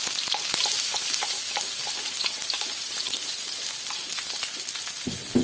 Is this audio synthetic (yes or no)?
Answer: no